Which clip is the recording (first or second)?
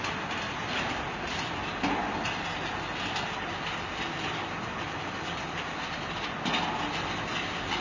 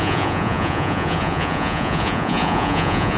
first